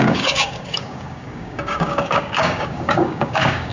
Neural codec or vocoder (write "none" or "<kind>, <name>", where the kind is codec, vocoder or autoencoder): codec, DAC